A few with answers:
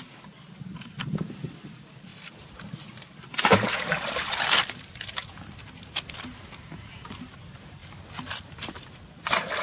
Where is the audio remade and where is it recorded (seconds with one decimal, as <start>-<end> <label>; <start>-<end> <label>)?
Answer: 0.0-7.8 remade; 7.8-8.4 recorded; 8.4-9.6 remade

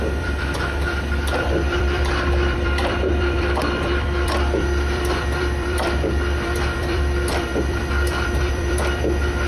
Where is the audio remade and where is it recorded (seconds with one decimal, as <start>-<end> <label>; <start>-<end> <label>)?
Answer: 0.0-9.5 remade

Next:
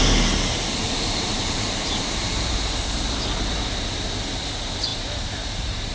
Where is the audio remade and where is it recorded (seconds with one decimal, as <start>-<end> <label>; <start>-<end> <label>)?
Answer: 0.0-0.8 recorded; 0.8-3.5 remade; 3.5-4.9 recorded; 4.9-5.9 remade

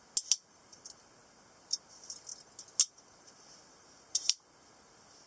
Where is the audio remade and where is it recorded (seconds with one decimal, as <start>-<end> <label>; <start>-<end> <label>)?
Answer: 0.0-5.3 recorded

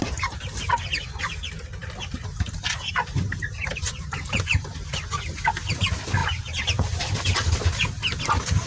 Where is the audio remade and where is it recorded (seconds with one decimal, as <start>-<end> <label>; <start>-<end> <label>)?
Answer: 0.0-0.7 remade; 0.7-1.8 recorded; 1.8-5.0 remade; 5.0-6.2 recorded; 6.2-7.1 remade; 7.1-8.7 recorded